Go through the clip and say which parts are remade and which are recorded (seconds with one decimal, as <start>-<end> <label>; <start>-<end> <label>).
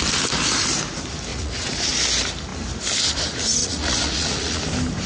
0.0-1.3 recorded; 1.3-1.8 remade; 1.8-3.6 recorded; 3.6-4.6 remade; 4.6-5.1 recorded